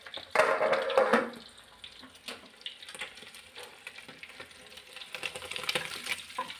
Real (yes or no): yes